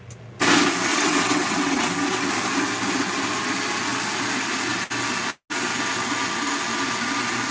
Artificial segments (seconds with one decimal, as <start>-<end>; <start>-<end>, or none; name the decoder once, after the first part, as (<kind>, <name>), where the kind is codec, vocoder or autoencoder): 0.9-1.9 (vocoder, WaveNeXt)